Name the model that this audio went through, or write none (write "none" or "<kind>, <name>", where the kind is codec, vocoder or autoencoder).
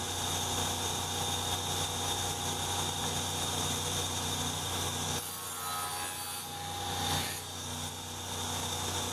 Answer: none